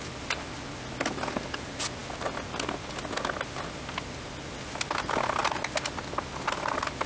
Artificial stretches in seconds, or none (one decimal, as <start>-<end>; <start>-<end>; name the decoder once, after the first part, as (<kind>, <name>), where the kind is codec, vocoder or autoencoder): none